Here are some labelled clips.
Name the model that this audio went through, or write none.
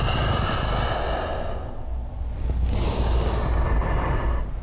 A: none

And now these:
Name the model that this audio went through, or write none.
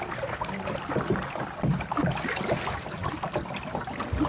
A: none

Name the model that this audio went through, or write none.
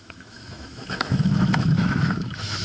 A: autoencoder, DAC-VAE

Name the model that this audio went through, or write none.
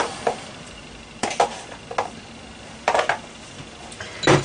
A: none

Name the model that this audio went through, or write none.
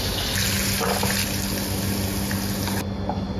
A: none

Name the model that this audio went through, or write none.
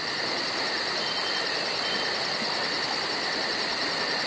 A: none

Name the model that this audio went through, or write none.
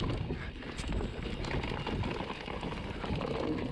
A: none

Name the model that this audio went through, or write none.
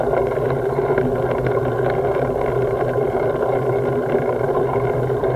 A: none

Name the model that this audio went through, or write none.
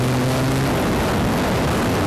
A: none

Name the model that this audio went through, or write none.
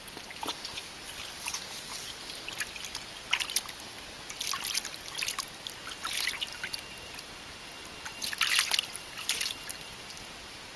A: none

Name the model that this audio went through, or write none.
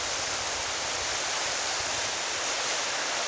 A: none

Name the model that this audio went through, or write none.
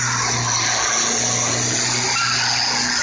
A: none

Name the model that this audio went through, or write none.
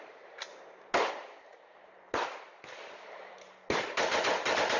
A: none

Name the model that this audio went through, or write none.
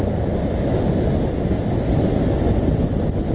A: none